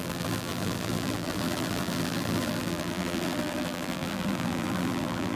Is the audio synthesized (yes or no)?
yes